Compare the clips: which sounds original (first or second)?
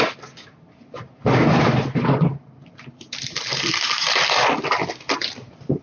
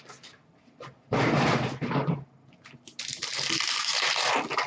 second